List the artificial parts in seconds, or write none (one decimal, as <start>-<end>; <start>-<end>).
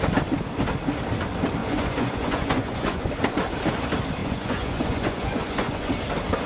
1.6-3.1; 4.2-5.9